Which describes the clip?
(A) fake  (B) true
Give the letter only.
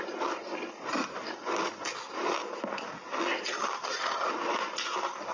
B